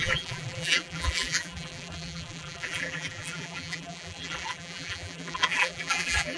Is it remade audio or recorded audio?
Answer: remade